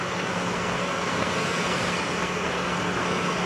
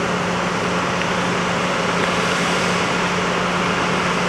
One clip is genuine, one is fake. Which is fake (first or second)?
first